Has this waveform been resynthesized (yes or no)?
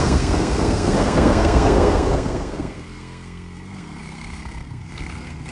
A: yes